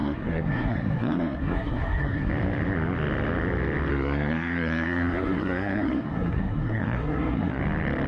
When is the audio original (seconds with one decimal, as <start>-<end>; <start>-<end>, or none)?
2.3-3.9; 7.6-8.1